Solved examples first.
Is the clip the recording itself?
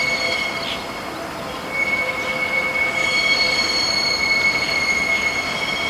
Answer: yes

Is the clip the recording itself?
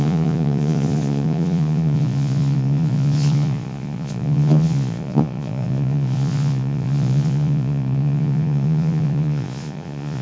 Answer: no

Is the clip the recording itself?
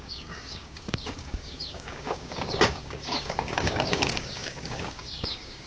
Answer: no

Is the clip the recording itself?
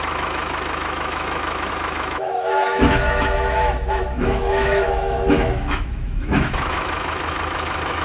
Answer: no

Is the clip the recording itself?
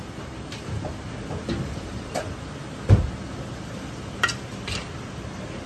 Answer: yes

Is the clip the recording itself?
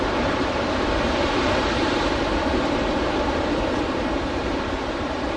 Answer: no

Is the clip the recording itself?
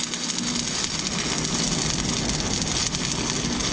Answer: yes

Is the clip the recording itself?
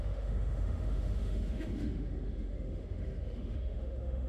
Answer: no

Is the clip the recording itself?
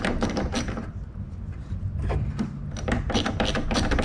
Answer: no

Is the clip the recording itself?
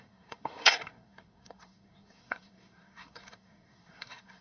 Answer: no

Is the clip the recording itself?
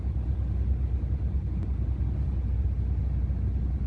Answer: yes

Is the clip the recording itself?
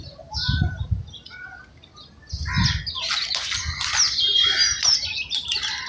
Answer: yes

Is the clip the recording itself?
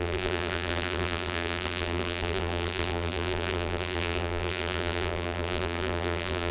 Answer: no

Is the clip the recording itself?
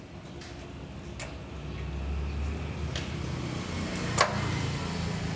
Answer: yes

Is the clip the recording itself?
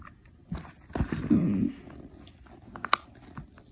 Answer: yes